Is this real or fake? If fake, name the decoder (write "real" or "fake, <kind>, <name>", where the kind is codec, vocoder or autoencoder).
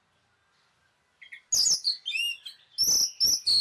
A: real